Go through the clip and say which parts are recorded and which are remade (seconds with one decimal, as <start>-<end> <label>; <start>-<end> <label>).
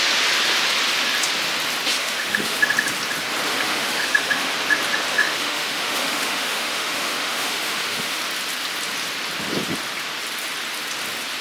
0.0-2.0 recorded; 2.0-2.6 remade; 2.6-3.5 recorded; 3.5-4.5 remade; 4.5-5.1 recorded; 5.1-8.2 remade; 8.2-11.4 recorded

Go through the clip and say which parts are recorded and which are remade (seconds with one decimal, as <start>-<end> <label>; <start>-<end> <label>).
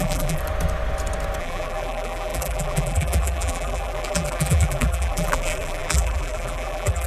0.0-0.4 remade; 0.4-1.4 recorded; 1.4-7.1 remade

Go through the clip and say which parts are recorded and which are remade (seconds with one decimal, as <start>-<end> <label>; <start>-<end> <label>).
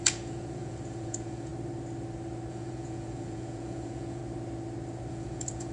0.0-1.5 remade; 1.5-2.5 recorded; 2.5-4.2 remade; 4.2-5.1 recorded; 5.1-5.7 remade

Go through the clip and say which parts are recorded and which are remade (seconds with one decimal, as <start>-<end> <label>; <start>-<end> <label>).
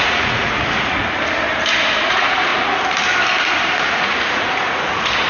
0.0-1.0 remade; 1.0-2.1 recorded; 2.1-2.5 remade; 2.5-3.8 recorded; 3.8-5.3 remade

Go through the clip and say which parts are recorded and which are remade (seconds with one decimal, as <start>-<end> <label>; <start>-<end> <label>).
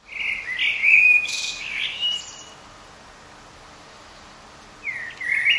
0.0-0.8 recorded; 0.8-2.2 remade; 2.2-5.6 recorded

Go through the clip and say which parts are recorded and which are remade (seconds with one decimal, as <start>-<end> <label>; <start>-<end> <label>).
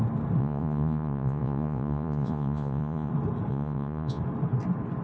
0.0-0.4 recorded; 0.4-3.1 remade; 3.1-3.5 recorded; 3.5-4.2 remade; 4.2-5.0 recorded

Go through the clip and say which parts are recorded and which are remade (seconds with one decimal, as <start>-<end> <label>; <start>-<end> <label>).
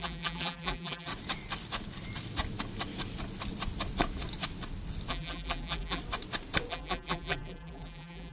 0.0-1.1 remade; 1.1-5.1 recorded; 5.1-6.0 remade; 6.0-6.7 recorded; 6.7-8.3 remade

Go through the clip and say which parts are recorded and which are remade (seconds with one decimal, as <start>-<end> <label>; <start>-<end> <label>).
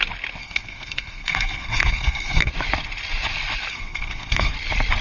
0.0-0.4 recorded; 0.4-2.5 remade; 2.5-3.7 recorded; 3.7-4.5 remade; 4.5-5.0 recorded